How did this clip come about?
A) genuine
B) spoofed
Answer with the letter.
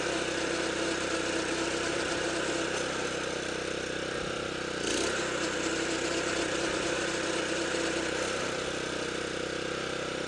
A